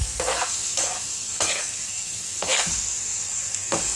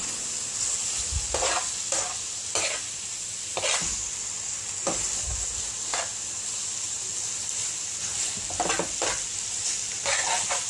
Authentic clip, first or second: second